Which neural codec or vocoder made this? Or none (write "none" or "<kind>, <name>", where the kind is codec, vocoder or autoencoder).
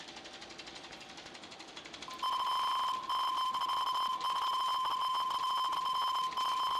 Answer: none